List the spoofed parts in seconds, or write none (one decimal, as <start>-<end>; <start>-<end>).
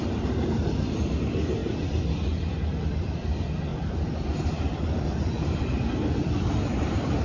0.0-7.2